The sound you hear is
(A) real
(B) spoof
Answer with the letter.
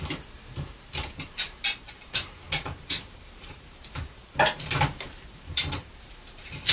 B